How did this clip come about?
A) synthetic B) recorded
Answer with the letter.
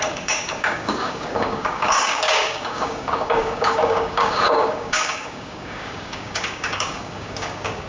A